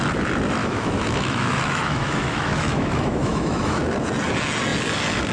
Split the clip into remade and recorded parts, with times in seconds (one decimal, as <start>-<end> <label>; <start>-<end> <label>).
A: 0.0-0.6 recorded; 0.6-3.8 remade; 3.8-5.3 recorded